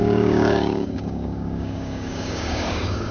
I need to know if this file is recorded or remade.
remade